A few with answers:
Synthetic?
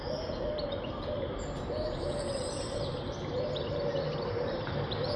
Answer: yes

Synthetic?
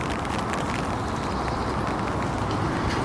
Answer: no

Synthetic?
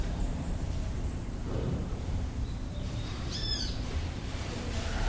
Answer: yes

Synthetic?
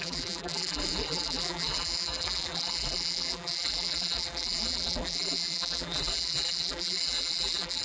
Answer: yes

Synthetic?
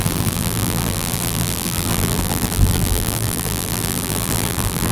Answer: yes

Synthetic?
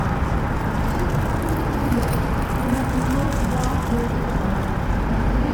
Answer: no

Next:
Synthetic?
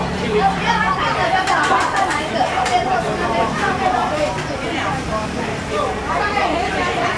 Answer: yes